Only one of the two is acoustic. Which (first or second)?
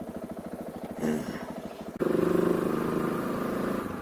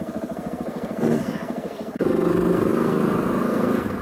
first